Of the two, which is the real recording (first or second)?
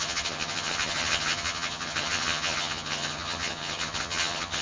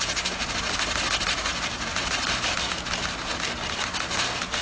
second